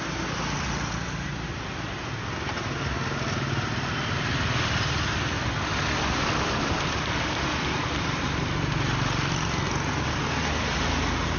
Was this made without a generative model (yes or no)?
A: yes